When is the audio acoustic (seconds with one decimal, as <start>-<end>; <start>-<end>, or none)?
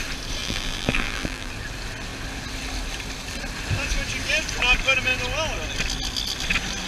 0.0-0.4; 1.5-6.9